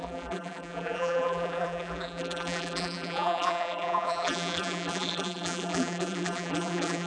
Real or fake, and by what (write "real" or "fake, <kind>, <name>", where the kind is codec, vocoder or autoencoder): fake, vocoder, BigVGAN v2